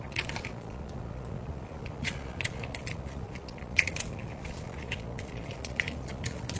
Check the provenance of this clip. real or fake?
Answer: fake